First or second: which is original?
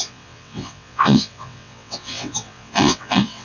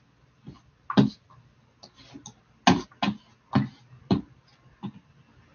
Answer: second